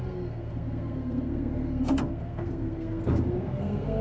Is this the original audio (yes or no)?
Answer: no